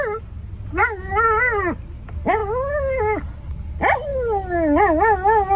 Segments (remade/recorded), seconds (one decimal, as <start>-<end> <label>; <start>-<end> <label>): 0.0-0.8 recorded; 0.8-1.4 remade; 1.4-5.6 recorded